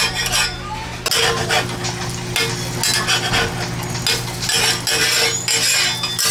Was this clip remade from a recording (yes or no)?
no